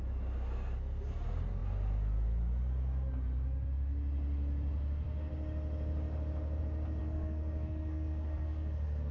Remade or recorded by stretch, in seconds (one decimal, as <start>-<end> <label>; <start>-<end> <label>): 0.0-7.0 recorded; 7.0-9.1 remade